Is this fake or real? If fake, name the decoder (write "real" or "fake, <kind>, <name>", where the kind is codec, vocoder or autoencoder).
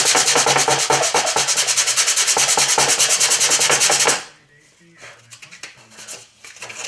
real